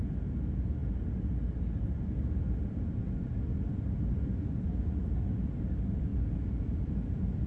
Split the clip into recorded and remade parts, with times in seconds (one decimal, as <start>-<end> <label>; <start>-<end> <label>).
0.0-6.1 recorded; 6.1-7.5 remade